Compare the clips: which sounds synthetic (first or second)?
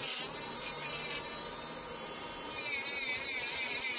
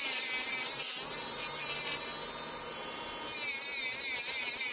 first